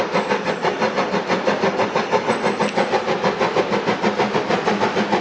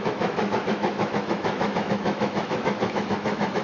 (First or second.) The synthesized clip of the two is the second